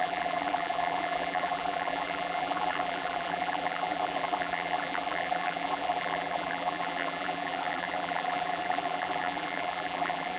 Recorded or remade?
remade